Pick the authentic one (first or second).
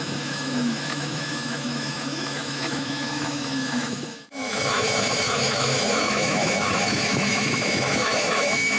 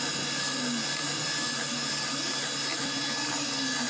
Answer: second